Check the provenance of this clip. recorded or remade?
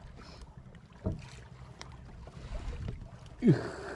recorded